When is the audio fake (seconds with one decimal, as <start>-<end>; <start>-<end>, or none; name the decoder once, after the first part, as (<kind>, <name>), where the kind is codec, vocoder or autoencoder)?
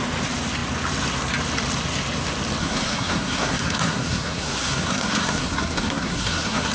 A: 2.6-6.7 (codec, SNAC)